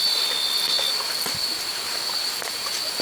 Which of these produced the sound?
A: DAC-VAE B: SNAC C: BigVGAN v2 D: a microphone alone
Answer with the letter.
D